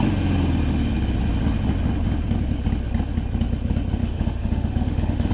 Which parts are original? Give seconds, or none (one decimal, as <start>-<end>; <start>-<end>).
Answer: 0.0-4.0